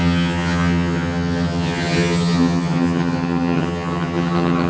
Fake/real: fake